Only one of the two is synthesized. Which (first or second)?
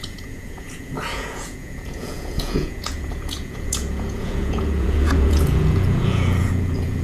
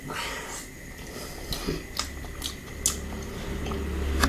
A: first